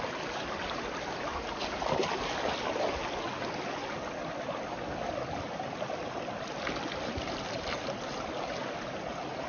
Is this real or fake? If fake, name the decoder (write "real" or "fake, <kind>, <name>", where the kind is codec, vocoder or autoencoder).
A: real